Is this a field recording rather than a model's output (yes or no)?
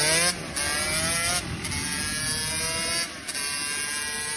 yes